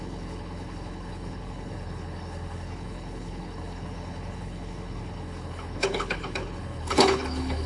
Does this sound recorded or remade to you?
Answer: remade